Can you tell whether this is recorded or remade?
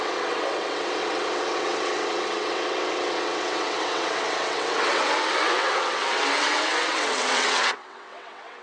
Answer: remade